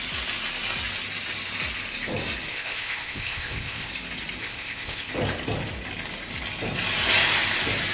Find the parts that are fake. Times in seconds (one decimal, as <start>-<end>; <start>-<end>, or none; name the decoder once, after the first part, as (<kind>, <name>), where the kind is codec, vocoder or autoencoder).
2.5-3.9 (codec, ZipCodec); 4.4-5.1